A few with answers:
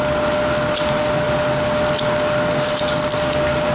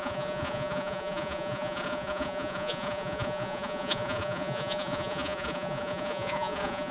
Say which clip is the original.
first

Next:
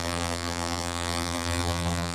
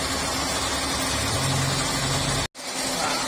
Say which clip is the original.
second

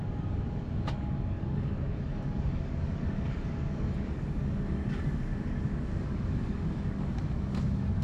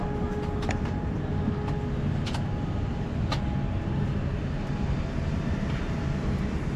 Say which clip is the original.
second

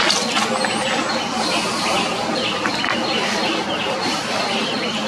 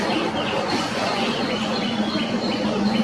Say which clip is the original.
first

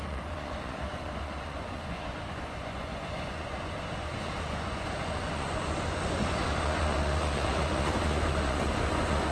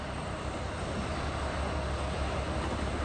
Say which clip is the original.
second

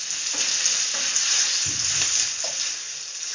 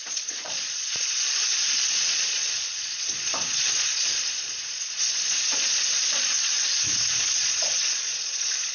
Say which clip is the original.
first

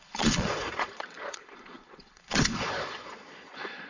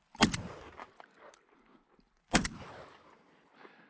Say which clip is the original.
second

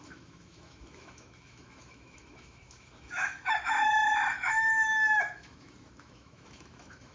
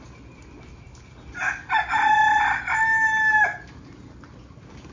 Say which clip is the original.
second